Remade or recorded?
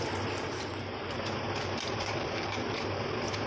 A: remade